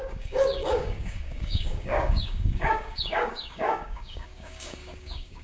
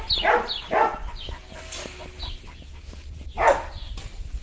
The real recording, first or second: second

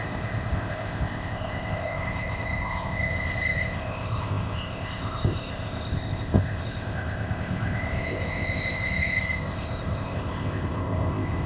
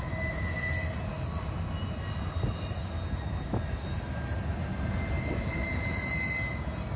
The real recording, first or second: second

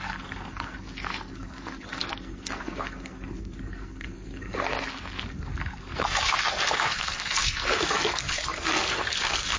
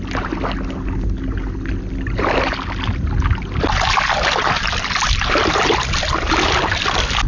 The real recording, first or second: second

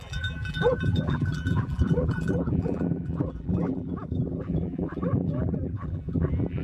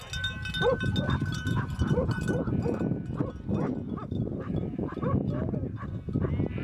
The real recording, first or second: second